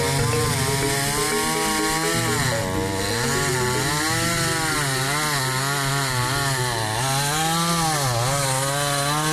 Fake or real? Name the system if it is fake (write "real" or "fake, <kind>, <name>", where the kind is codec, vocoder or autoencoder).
real